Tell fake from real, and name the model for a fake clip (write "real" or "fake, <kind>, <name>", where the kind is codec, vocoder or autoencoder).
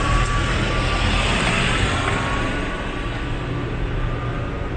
real